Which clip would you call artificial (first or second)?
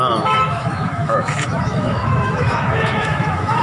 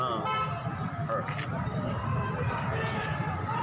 first